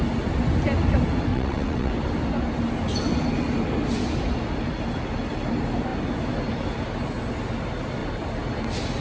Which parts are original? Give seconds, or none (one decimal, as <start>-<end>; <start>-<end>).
0.0-1.3; 1.9-9.0